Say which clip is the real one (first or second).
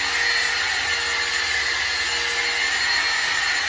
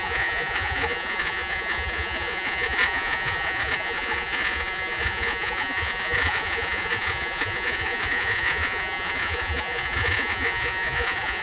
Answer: first